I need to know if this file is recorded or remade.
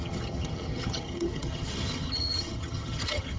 remade